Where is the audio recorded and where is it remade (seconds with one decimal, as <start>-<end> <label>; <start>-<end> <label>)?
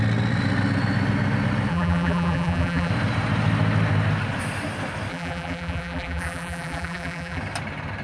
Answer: 0.0-1.7 recorded; 1.7-2.9 remade; 2.9-5.1 recorded; 5.1-7.4 remade; 7.4-8.0 recorded